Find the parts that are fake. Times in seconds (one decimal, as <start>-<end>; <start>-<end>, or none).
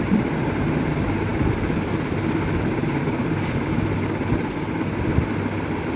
none